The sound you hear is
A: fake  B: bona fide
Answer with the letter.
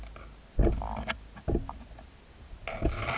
B